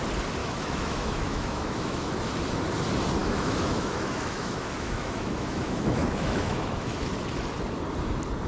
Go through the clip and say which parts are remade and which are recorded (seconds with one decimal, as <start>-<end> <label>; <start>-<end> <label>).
0.0-0.4 recorded; 0.4-2.2 remade; 2.2-3.2 recorded; 3.2-7.1 remade; 7.1-8.5 recorded